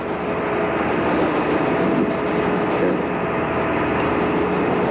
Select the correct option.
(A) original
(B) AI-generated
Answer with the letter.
A